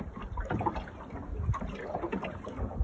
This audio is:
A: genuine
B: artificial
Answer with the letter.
A